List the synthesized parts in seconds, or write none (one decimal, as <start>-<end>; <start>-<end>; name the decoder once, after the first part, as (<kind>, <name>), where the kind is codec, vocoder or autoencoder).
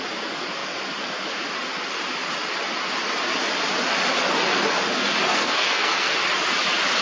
5.3-6.1 (codec, SNAC)